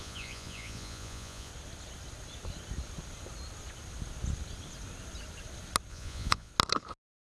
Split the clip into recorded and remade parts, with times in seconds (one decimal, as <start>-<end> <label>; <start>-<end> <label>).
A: 0.0-1.5 remade; 1.5-5.9 recorded; 5.9-6.5 remade; 6.5-7.3 recorded